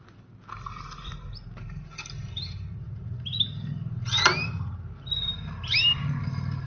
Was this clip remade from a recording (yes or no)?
no